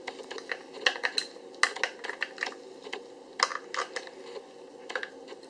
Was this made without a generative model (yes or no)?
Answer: yes